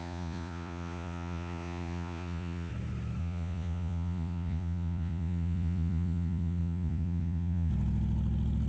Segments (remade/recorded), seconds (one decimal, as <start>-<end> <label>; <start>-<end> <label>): 0.0-2.7 remade; 2.7-3.2 recorded; 3.2-7.7 remade; 7.7-8.7 recorded